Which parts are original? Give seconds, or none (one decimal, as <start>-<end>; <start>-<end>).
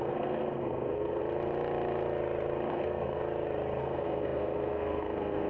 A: 1.2-2.7; 3.2-3.8